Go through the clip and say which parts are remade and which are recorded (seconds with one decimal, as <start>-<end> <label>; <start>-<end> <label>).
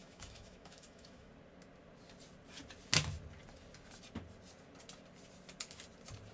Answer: 0.0-1.3 remade; 1.3-6.3 recorded